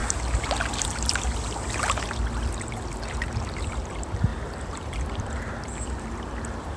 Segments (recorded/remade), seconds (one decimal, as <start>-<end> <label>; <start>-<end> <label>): 0.0-4.3 recorded; 4.3-6.8 remade